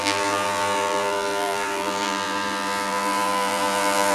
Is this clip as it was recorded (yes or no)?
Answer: no